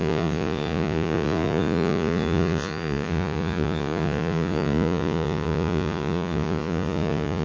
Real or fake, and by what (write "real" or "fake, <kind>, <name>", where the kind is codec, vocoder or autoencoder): fake, vocoder, Vocos